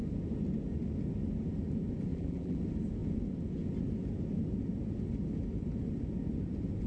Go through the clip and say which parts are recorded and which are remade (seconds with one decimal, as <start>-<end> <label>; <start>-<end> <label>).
0.0-2.1 recorded; 2.1-2.6 remade; 2.6-6.9 recorded